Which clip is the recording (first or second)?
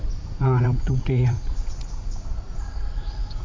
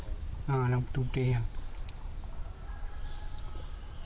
second